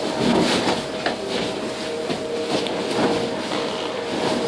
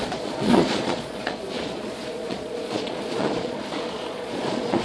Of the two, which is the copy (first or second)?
second